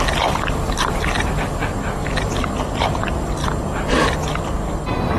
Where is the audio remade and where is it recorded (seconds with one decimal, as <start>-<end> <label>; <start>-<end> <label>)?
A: 0.0-5.2 recorded